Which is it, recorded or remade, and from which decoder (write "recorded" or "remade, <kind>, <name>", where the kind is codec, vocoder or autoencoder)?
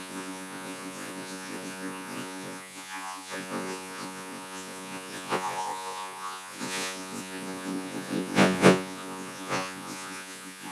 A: remade, vocoder, Vocos